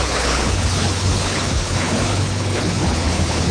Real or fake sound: fake